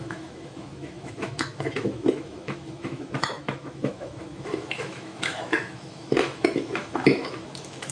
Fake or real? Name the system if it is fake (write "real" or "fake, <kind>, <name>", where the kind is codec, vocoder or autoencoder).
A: fake, autoencoder, DAC-VAE